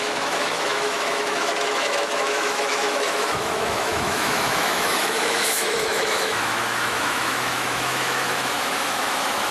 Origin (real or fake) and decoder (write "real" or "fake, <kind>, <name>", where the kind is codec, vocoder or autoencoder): fake, autoencoder, DAC-VAE